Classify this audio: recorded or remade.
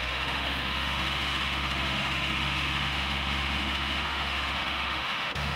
remade